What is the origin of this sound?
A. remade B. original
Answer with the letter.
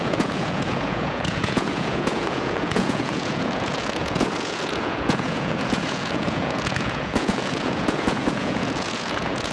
A